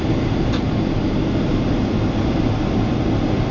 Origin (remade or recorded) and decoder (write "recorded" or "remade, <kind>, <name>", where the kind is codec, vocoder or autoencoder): recorded